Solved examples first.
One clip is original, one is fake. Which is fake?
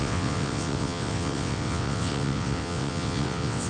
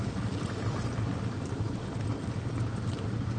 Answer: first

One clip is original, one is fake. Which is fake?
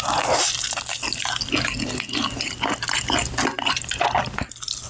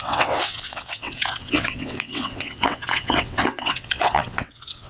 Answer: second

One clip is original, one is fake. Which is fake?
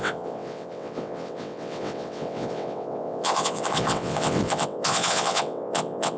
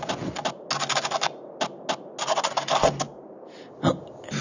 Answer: first